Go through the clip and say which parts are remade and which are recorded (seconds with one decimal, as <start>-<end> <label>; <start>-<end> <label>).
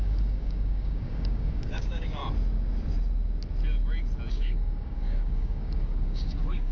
0.0-2.2 remade; 2.2-4.3 recorded; 4.3-6.7 remade